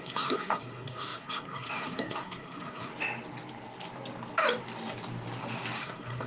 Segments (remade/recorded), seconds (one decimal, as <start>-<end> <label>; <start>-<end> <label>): 0.0-2.9 remade; 2.9-5.8 recorded; 5.8-6.3 remade